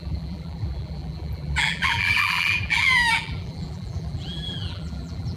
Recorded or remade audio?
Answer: remade